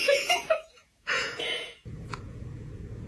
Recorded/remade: remade